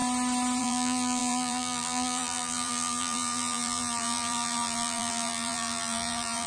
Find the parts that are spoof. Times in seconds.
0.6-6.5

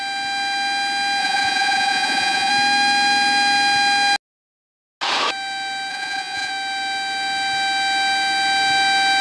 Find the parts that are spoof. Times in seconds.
1.2-2.5; 5.9-6.5

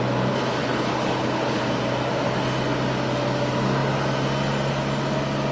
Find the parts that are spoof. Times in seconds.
0.6-1.6

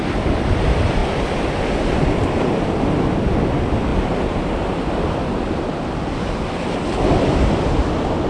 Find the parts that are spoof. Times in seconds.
none

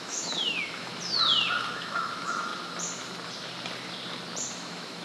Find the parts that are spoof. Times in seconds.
0.0-0.9; 1.7-2.5; 4.5-5.0

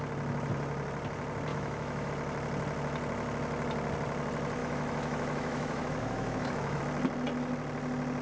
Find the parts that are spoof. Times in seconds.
1.5-2.1; 4.6-6.8

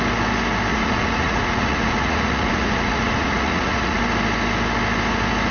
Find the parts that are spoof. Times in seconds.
0.7-4.0

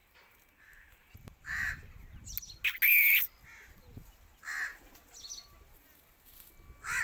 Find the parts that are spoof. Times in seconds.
0.0-2.2